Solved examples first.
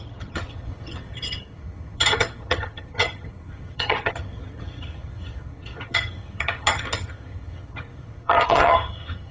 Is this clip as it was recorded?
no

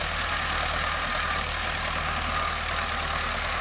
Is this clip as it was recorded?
yes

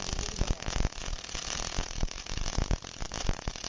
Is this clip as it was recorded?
yes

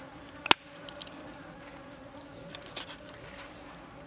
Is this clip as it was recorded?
yes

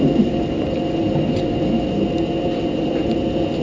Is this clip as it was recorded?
yes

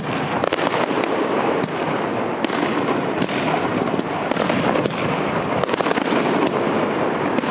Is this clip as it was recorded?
yes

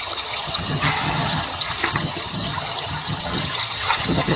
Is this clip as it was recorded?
no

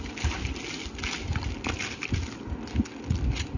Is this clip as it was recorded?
yes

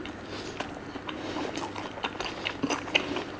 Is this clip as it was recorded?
yes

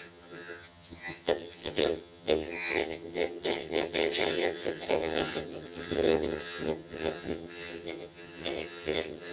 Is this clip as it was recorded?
no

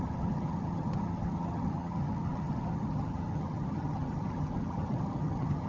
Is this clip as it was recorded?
no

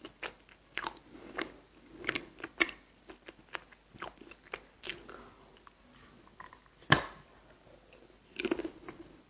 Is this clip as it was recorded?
yes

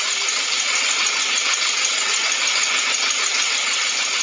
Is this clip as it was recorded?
yes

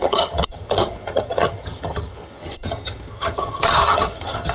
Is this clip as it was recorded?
no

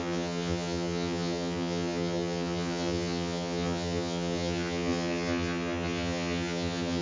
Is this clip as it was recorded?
no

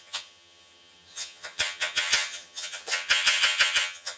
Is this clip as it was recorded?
no